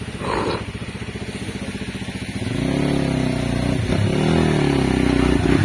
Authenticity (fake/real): real